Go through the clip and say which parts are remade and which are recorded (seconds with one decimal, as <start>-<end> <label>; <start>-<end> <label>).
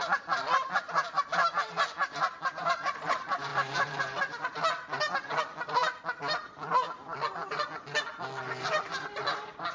0.0-9.7 recorded